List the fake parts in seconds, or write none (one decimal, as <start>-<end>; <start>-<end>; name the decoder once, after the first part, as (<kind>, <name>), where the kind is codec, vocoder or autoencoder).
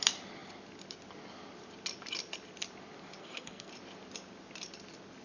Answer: 3.2-3.7 (codec, SNAC)